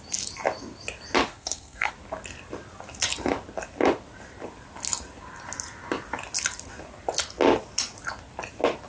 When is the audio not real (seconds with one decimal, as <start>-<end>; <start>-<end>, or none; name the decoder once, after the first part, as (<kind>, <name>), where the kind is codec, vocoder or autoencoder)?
1.3-1.9 (codec, SNAC)